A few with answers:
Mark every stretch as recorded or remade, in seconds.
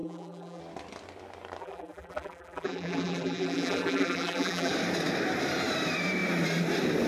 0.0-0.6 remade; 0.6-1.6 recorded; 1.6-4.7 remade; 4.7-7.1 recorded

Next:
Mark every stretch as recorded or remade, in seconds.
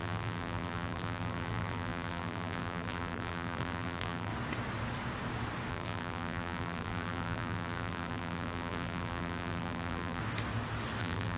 0.0-4.3 remade; 4.3-5.7 recorded; 5.7-10.2 remade; 10.2-11.0 recorded; 11.0-11.4 remade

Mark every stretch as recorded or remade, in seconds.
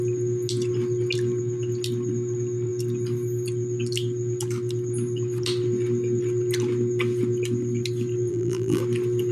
0.0-8.3 recorded; 8.3-8.8 remade; 8.8-9.3 recorded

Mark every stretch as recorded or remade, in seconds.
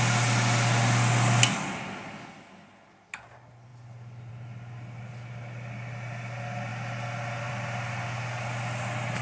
0.0-9.2 recorded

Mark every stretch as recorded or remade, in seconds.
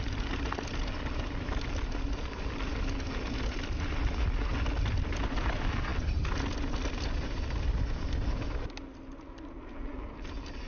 0.0-10.7 recorded